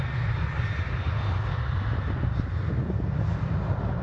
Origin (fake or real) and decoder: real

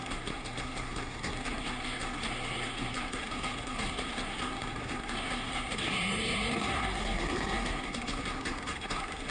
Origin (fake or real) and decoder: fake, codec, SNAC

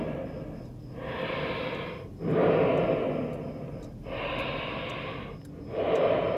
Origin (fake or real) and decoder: real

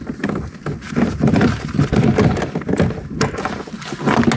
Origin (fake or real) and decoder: real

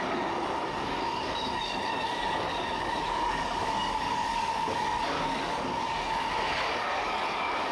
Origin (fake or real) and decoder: fake, codec, DAC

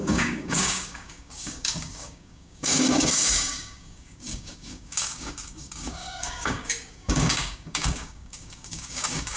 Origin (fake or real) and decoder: fake, codec, DAC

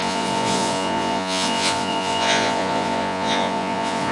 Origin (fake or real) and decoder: fake, vocoder, Vocos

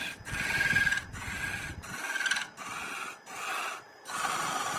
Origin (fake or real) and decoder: real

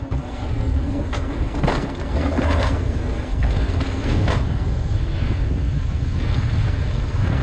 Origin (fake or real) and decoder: fake, codec, SNAC